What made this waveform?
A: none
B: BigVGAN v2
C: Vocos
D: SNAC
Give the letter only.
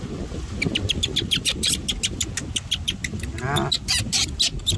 A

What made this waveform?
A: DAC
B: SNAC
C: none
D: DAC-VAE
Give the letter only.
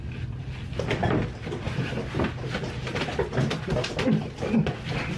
C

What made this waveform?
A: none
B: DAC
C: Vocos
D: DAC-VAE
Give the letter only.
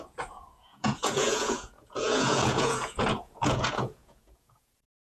C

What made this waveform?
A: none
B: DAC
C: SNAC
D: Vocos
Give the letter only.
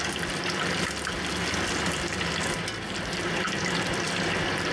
A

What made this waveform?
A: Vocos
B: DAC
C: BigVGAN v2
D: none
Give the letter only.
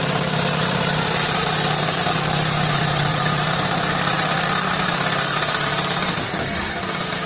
C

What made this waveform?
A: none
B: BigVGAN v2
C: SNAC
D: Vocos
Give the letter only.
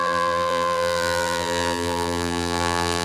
B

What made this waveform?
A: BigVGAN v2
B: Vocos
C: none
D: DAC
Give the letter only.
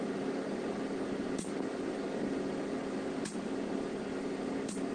C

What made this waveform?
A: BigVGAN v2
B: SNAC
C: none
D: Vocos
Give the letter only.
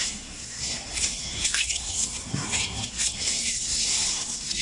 B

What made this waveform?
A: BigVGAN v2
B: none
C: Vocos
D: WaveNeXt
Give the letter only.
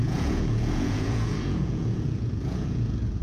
C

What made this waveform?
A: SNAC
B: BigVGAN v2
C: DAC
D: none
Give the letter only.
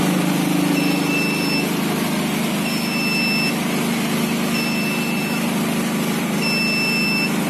D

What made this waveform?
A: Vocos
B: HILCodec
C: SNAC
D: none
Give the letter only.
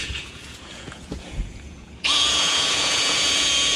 A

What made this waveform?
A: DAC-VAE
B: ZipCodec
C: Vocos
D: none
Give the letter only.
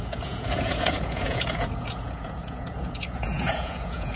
C